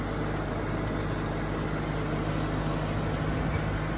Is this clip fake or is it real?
real